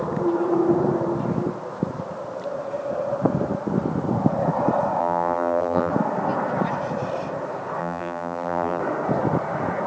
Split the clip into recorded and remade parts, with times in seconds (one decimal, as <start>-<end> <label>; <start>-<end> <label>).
0.0-5.0 recorded; 5.0-5.9 remade; 5.9-7.8 recorded; 7.8-8.8 remade; 8.8-9.9 recorded